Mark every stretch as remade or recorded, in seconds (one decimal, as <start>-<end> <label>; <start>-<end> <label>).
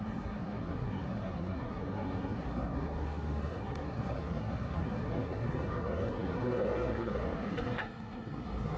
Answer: 0.0-8.8 remade